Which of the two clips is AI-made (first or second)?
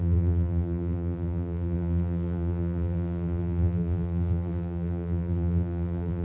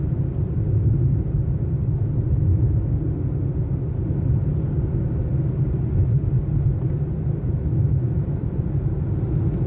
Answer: first